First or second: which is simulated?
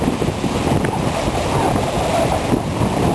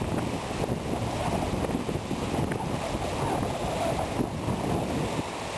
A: first